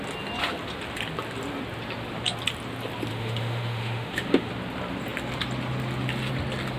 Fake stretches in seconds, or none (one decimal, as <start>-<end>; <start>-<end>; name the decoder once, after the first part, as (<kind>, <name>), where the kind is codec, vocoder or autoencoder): 3.1-4.5 (autoencoder, DAC-VAE)